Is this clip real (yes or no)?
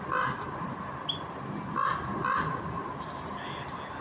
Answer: yes